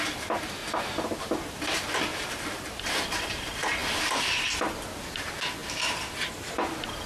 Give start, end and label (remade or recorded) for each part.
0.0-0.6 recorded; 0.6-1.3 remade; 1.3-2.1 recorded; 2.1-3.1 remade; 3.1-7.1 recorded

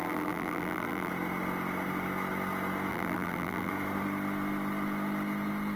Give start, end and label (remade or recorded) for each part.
0.0-1.1 remade; 1.1-2.9 recorded; 2.9-3.7 remade; 3.7-5.8 recorded

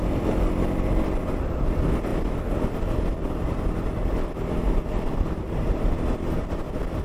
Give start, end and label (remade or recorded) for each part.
0.0-7.0 recorded

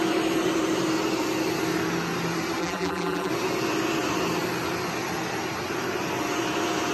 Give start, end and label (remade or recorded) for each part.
0.0-2.6 recorded; 2.6-3.3 remade; 3.3-6.9 recorded

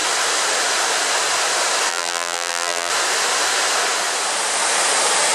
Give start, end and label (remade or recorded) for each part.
0.0-1.9 recorded; 1.9-2.9 remade; 2.9-5.3 recorded

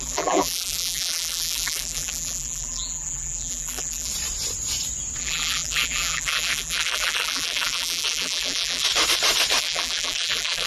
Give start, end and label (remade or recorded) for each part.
0.0-4.1 remade; 4.1-5.2 recorded; 5.2-8.8 remade; 8.8-9.6 recorded; 9.6-10.7 remade